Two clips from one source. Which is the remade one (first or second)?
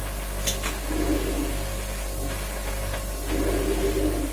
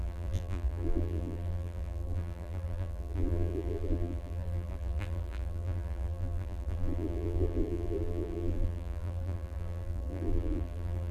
second